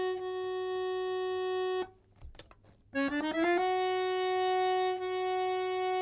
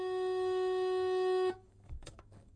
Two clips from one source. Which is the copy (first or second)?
second